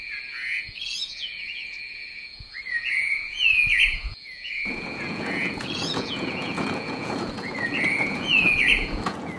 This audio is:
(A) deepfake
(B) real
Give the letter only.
A